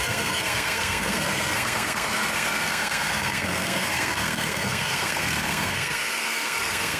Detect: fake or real fake